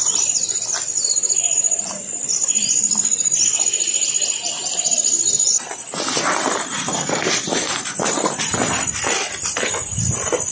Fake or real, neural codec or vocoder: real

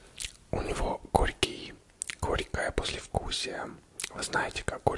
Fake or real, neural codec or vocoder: real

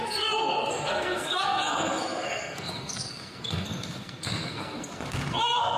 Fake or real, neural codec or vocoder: fake, codec, SNAC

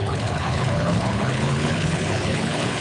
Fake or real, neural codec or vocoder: fake, codec, HILCodec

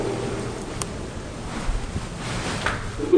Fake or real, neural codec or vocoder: real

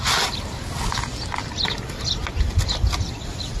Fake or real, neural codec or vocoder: real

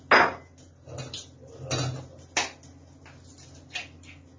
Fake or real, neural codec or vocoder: real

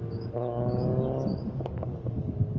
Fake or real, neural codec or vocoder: fake, codec, DAC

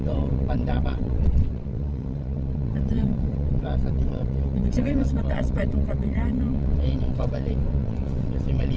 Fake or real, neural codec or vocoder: fake, vocoder, WaveNeXt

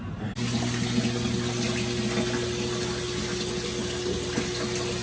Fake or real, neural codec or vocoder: real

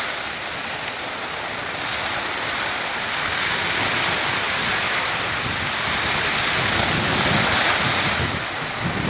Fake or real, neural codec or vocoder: real